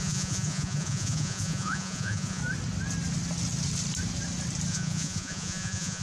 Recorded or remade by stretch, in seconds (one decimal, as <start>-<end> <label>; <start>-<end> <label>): 0.0-2.4 remade; 2.4-4.7 recorded; 4.7-6.0 remade